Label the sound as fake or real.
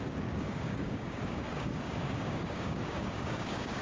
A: fake